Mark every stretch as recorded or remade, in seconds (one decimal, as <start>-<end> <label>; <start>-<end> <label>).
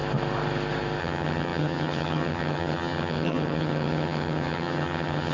0.0-1.0 recorded; 1.0-5.3 remade